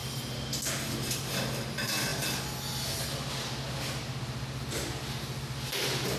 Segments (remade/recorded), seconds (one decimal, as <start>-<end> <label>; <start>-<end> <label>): 0.0-6.2 recorded